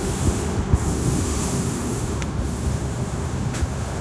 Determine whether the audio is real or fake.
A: fake